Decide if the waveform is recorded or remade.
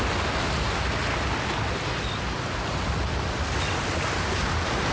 recorded